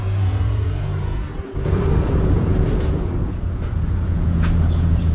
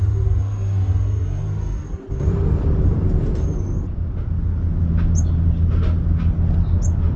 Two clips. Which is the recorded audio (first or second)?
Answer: second